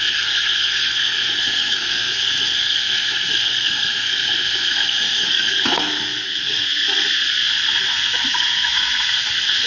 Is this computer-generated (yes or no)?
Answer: yes